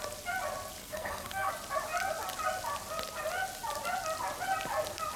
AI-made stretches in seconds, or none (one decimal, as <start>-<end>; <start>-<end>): 0.8-1.5